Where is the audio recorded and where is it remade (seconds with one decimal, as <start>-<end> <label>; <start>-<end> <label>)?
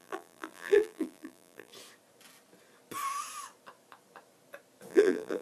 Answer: 0.0-1.7 remade; 1.7-4.9 recorded; 4.9-5.4 remade